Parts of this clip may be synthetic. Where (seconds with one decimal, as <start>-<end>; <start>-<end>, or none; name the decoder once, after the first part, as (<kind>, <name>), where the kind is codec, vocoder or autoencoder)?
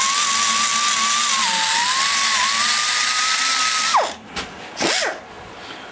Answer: none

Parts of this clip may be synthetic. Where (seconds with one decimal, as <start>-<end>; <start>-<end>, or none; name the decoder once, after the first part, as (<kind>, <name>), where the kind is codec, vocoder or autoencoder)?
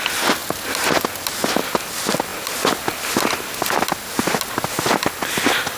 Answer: none